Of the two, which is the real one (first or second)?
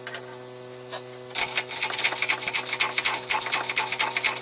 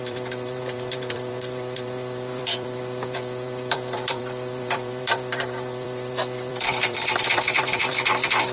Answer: first